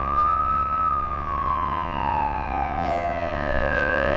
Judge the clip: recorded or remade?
remade